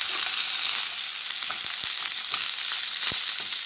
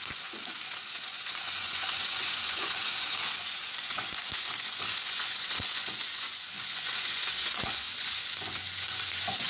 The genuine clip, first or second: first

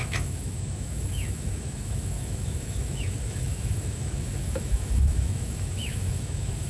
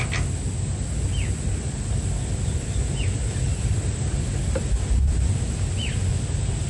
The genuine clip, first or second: second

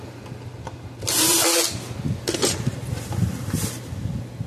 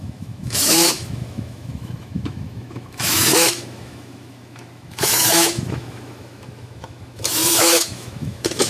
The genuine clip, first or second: first